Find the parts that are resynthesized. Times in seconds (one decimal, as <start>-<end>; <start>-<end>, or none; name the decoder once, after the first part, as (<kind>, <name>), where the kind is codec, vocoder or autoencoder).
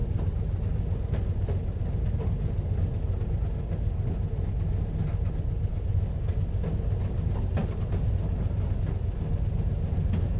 none